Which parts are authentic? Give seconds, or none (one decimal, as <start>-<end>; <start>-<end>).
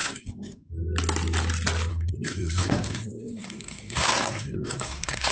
0.7-1.9